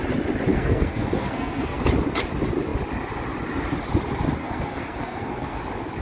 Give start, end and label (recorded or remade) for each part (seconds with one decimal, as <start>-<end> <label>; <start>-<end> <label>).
0.0-0.5 recorded; 0.5-1.8 remade; 1.8-4.4 recorded; 4.4-5.6 remade; 5.6-6.0 recorded